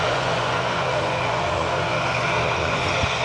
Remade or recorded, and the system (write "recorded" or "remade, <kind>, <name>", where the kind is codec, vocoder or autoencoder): remade, vocoder, Vocos